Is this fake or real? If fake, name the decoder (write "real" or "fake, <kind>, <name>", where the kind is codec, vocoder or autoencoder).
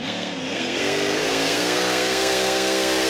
fake, codec, SNAC